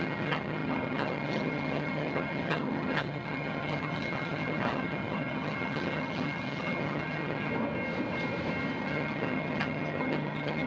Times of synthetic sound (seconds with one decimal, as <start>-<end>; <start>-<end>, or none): 0.0-7.5; 8.8-10.7